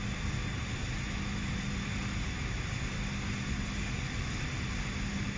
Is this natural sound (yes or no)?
yes